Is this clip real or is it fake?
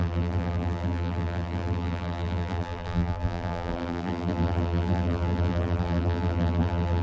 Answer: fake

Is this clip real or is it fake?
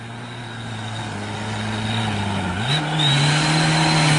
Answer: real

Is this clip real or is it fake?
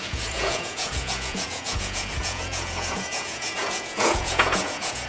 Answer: fake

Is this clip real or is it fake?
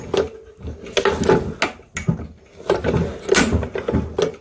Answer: real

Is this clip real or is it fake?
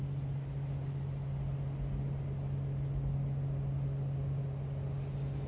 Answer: real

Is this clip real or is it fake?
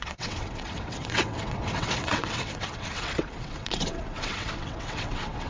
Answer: fake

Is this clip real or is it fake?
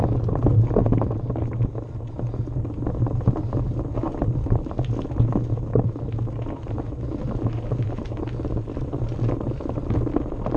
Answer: real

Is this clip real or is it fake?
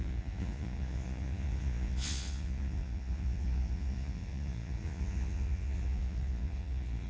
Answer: fake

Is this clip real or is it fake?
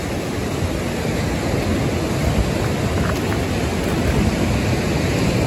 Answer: real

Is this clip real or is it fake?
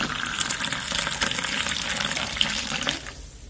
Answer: real